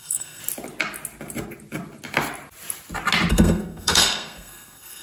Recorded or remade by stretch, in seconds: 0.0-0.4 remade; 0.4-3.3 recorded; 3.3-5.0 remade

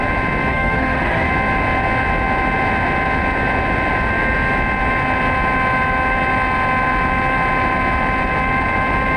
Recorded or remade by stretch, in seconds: 0.0-0.5 recorded; 0.5-1.3 remade; 1.3-9.2 recorded

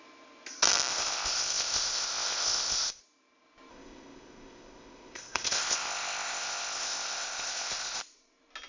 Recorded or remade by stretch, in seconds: 0.0-0.9 recorded; 0.9-3.0 remade; 3.0-3.7 recorded; 3.7-8.0 remade; 8.0-8.7 recorded